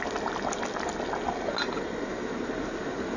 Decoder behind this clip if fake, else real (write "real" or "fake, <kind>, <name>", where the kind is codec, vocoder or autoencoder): real